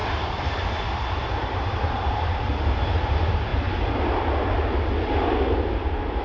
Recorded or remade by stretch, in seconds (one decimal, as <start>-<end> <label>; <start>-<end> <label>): 0.0-0.5 remade; 0.5-1.2 recorded; 1.2-2.0 remade; 2.0-6.2 recorded